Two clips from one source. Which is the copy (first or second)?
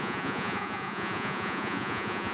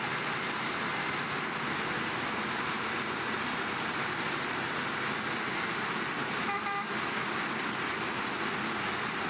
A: first